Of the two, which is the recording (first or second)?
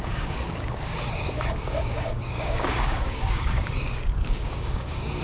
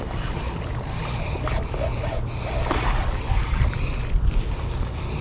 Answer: second